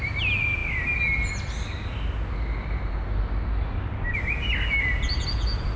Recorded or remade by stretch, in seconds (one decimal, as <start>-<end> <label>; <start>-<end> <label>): 0.0-5.8 recorded